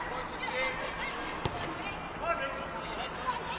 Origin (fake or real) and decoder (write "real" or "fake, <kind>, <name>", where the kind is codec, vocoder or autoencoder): real